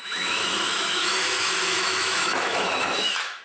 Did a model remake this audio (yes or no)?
yes